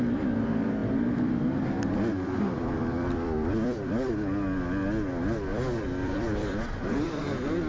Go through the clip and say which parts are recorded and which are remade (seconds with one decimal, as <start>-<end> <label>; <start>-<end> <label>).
0.0-0.8 recorded; 0.8-4.1 remade; 4.1-5.5 recorded; 5.5-7.2 remade; 7.2-7.7 recorded